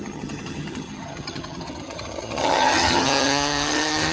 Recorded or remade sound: remade